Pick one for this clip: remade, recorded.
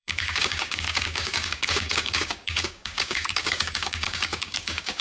remade